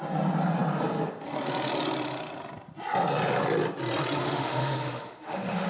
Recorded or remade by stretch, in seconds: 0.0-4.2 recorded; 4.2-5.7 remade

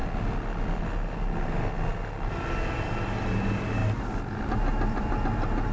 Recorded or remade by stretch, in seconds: 0.0-5.7 recorded

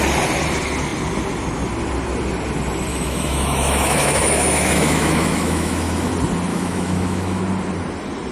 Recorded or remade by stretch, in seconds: 0.0-2.9 recorded; 2.9-6.1 remade; 6.1-6.5 recorded; 6.5-7.4 remade; 7.4-8.3 recorded

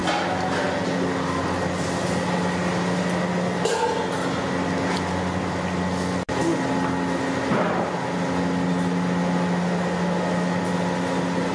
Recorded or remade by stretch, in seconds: 0.0-11.5 recorded

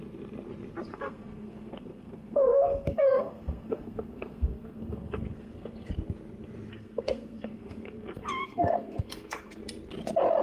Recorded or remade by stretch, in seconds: 0.0-0.9 recorded; 0.9-5.9 remade; 5.9-6.7 recorded; 6.7-9.6 remade; 9.6-10.4 recorded

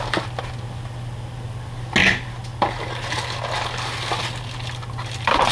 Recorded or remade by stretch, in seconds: 0.0-5.5 recorded